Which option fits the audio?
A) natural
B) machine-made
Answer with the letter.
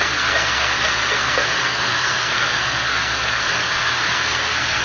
B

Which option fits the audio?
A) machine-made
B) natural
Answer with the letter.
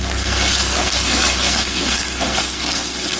A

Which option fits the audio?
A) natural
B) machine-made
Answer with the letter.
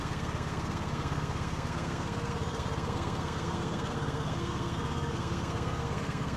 B